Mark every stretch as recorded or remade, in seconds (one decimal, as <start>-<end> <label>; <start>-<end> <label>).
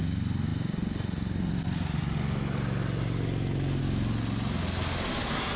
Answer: 0.0-5.6 recorded